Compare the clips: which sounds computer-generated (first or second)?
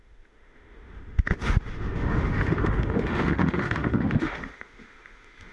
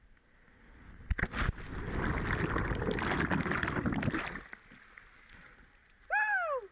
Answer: first